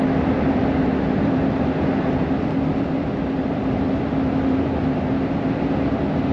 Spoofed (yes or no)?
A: no